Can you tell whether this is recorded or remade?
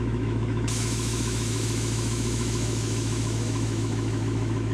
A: remade